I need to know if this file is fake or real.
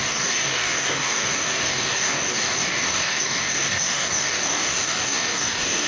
fake